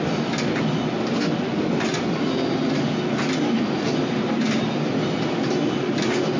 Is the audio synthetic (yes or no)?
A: no